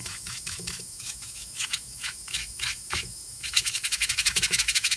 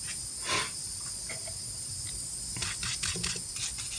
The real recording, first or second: second